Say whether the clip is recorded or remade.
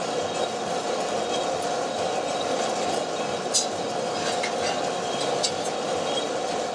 recorded